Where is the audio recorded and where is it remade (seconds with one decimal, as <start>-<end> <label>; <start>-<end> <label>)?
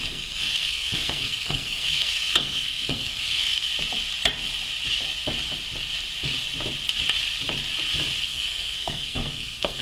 0.0-3.7 remade; 3.7-8.3 recorded; 8.3-9.8 remade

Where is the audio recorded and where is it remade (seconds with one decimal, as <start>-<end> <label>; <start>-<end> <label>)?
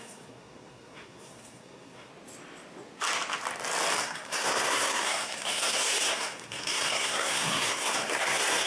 0.0-2.1 remade; 2.1-4.0 recorded; 4.0-8.7 remade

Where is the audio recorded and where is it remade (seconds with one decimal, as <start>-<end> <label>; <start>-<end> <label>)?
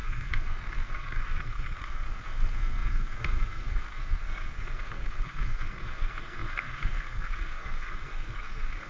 0.0-8.9 remade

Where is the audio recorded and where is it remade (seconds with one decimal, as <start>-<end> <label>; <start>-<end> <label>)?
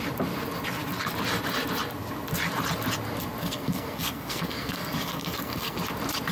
0.0-3.4 recorded; 3.4-5.8 remade; 5.8-6.3 recorded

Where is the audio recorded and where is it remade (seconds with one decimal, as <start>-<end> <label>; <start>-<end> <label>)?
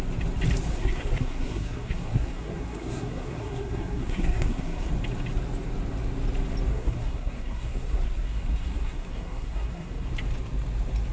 0.0-0.7 recorded; 0.7-4.9 remade; 4.9-6.7 recorded; 6.7-10.1 remade; 10.1-11.1 recorded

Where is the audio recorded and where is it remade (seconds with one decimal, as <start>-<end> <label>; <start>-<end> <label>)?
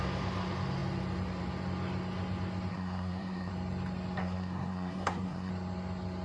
0.0-2.7 recorded; 2.7-3.5 remade; 3.5-4.2 recorded; 4.2-5.5 remade; 5.5-6.2 recorded